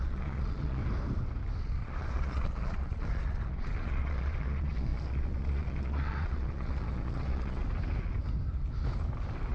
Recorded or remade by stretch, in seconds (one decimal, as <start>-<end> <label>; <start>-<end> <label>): 0.0-0.8 remade; 0.8-1.6 recorded; 1.6-7.6 remade; 7.6-9.5 recorded